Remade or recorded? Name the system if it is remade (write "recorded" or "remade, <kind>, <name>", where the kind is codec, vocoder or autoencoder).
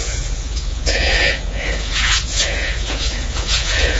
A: remade, vocoder, Vocos